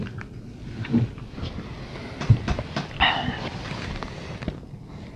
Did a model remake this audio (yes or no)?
no